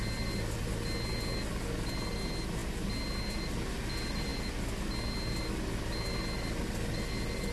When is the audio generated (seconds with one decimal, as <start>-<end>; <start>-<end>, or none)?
none